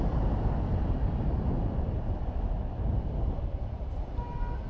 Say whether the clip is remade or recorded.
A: recorded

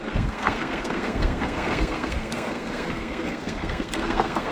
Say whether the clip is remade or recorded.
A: remade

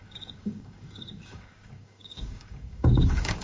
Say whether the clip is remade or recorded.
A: remade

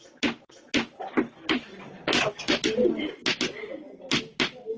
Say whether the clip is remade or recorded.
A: recorded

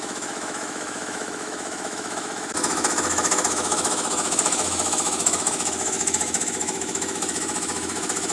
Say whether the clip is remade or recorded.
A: remade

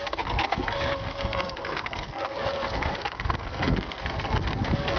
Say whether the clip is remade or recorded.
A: remade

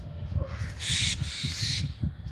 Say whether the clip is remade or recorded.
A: remade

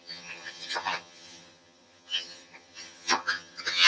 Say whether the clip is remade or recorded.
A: remade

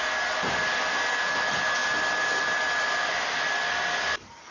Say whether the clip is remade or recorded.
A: recorded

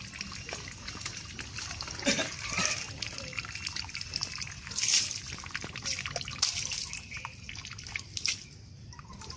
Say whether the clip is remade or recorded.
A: recorded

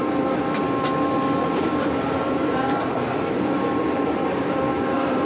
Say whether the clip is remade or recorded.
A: remade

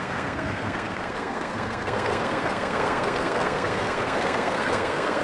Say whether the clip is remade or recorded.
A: remade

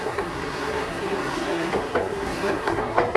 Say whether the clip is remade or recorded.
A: remade